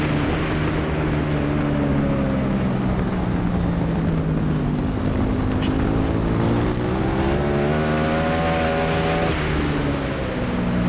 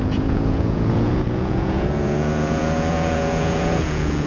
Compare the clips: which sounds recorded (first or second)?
first